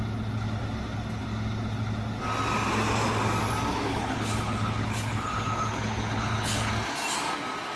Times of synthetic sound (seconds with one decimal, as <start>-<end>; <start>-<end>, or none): 3.7-6.7